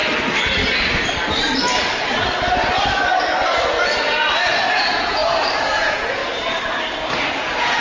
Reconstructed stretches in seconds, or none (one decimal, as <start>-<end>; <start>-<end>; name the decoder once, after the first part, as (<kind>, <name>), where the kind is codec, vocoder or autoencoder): 4.7-5.2 (vocoder, Vocos); 5.8-6.2; 7.3-7.8